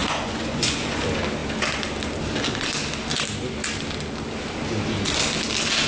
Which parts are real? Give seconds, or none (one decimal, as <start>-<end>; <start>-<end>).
1.0-5.9